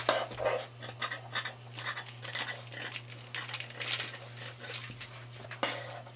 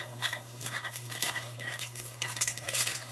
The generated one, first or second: second